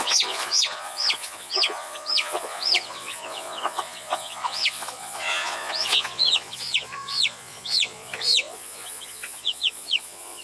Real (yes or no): no